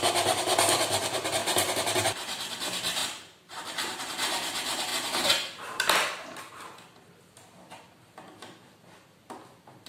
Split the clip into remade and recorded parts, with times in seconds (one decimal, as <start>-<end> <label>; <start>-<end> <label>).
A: 0.0-3.0 recorded; 3.0-4.0 remade; 4.0-9.9 recorded